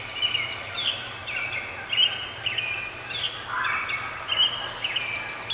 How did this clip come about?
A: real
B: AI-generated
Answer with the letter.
A